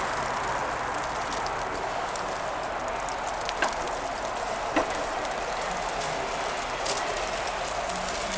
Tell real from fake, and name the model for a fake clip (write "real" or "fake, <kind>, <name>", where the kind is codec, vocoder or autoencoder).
real